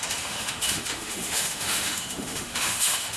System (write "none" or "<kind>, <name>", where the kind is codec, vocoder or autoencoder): autoencoder, DAC-VAE